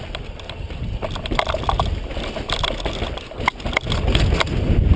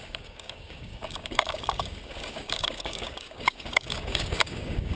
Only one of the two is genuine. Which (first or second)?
first